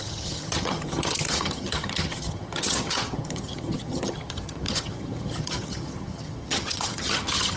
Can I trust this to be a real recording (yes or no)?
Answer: no